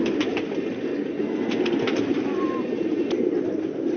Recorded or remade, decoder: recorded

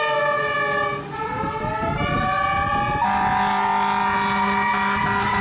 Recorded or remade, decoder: recorded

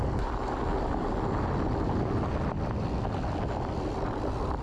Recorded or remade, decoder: recorded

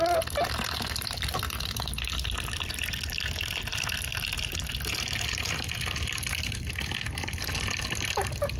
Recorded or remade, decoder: recorded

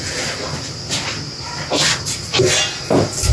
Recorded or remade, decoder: recorded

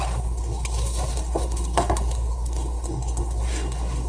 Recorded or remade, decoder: remade, codec, SNAC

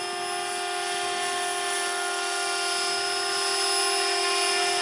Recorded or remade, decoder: recorded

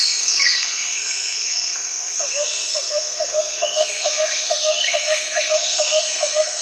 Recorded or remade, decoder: remade, codec, SNAC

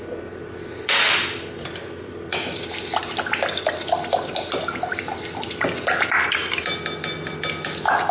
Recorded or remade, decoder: recorded